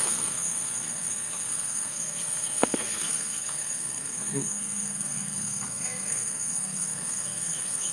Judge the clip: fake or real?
fake